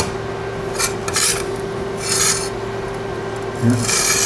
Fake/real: real